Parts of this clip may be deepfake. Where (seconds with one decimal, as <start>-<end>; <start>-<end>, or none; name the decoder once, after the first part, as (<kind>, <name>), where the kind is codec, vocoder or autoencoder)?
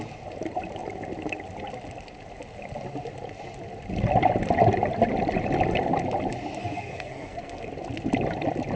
6.6-7.7 (codec, SNAC)